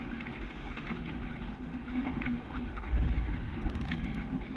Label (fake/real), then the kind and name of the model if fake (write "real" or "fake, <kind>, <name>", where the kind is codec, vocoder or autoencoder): fake, autoencoder, DAC-VAE